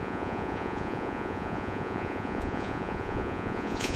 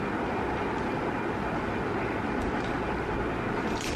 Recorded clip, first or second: second